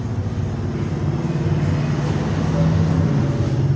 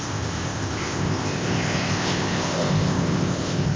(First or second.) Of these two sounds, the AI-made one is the second